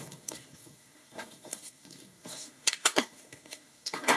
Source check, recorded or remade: remade